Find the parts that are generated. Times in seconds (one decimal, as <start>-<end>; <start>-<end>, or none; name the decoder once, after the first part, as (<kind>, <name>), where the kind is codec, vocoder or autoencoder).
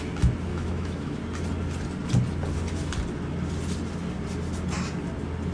0.5-1.2 (autoencoder, DAC-VAE)